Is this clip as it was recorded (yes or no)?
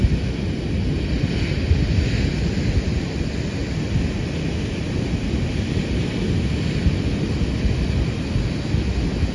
yes